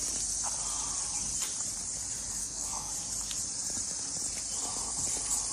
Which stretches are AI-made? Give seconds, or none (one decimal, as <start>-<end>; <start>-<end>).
2.4-2.9